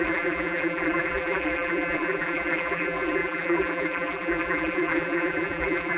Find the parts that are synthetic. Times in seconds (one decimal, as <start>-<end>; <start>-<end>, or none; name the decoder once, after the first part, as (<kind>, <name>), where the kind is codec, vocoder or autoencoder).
0.0-6.0 (vocoder, BigVGAN v2)